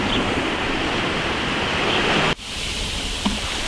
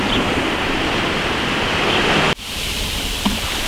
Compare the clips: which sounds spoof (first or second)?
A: second